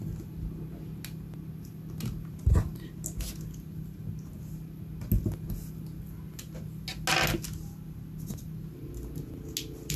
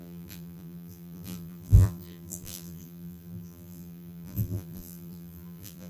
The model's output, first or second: second